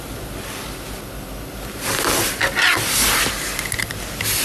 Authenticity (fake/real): real